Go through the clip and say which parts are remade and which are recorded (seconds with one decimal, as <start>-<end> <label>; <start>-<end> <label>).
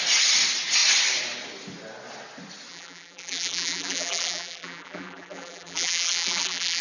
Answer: 0.0-2.7 recorded; 2.7-6.8 remade